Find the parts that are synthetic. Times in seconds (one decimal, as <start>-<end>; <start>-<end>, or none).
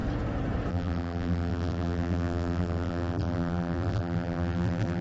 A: 0.7-5.0